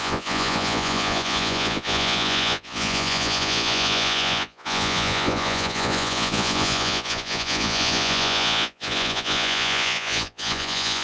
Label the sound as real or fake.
fake